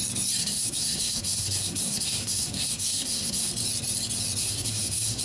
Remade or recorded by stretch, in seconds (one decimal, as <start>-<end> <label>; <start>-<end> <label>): 0.0-0.4 recorded; 0.4-3.5 remade; 3.5-4.4 recorded; 4.4-5.2 remade